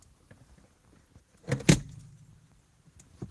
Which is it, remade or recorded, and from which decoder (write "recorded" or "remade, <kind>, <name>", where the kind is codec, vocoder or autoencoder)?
recorded